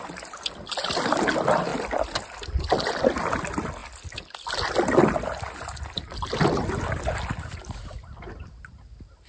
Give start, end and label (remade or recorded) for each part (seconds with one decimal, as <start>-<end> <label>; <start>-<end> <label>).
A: 0.0-9.3 recorded